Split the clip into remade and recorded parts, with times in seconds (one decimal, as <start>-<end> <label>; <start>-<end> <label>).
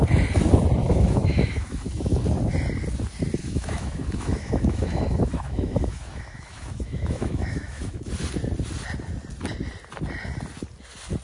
0.0-0.8 recorded; 0.8-2.2 remade; 2.2-3.4 recorded; 3.4-8.1 remade; 8.1-11.2 recorded